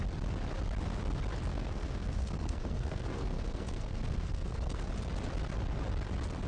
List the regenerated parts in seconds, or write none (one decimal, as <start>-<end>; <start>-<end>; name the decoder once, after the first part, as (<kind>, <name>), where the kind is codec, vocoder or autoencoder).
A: 1.5-4.9 (codec, SNAC)

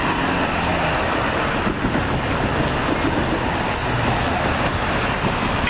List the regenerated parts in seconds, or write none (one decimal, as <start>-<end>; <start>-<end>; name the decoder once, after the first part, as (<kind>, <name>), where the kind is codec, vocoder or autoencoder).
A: none

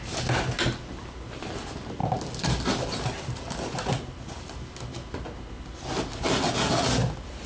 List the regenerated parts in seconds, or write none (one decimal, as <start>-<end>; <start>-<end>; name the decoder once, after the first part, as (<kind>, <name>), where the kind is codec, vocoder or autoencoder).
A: none

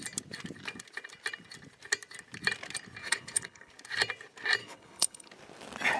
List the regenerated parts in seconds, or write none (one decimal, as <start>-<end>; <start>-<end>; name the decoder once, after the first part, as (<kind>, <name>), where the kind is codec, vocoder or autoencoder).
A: 3.0-3.7 (codec, HILCodec); 4.6-5.3

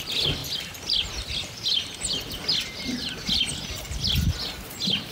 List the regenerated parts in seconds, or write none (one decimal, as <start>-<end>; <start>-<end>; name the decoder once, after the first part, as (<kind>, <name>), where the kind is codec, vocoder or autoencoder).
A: none

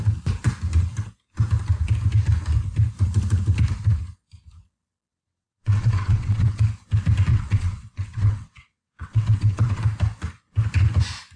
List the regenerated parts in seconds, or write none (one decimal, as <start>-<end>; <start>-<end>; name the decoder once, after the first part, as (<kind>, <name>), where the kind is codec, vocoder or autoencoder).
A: 5.1-6.6 (vocoder, WaveNeXt); 7.3-9.8

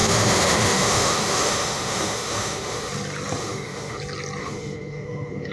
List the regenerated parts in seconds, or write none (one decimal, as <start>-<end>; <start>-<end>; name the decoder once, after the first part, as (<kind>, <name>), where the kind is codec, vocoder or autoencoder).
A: 0.0-2.9 (autoencoder, DAC-VAE); 3.4-4.0; 4.4-5.5